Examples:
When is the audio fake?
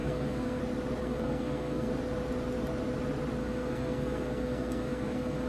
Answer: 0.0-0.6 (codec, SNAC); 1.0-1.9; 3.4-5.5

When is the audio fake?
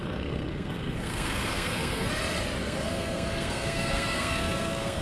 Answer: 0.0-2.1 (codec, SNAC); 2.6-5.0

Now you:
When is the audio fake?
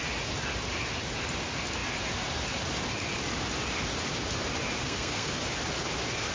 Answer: 4.8-5.4 (codec, SNAC)